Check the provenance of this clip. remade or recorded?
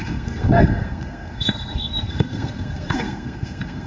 remade